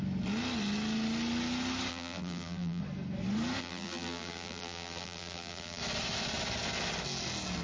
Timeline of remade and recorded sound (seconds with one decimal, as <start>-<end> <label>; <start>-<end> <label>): 0.0-1.9 recorded; 1.9-2.8 remade; 2.8-3.6 recorded; 3.6-5.8 remade; 5.8-7.6 recorded